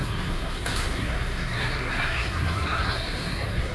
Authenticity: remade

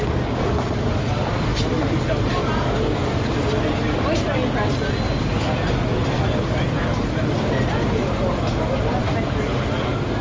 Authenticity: recorded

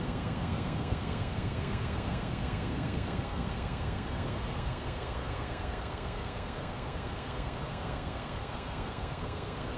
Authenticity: remade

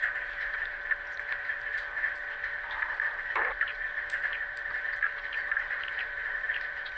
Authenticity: remade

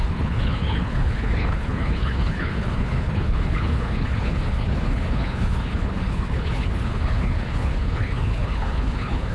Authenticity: remade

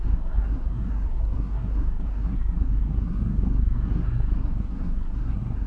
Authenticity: remade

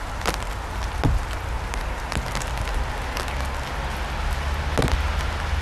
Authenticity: recorded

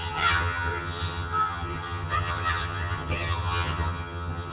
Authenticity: remade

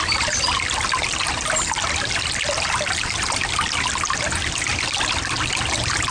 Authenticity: recorded